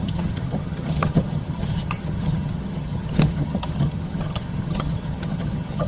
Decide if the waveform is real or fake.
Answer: fake